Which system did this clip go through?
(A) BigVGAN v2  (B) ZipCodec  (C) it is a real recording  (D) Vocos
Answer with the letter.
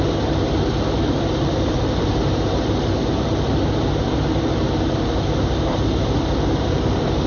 A